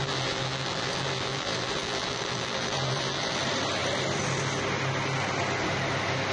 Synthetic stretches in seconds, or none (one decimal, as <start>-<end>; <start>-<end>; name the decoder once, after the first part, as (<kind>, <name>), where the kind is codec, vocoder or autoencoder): 0.0-3.4 (vocoder, BigVGAN v2)